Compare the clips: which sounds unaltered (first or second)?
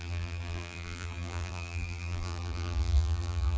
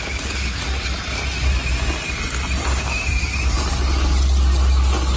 second